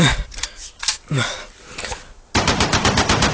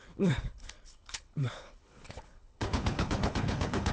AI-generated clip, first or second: second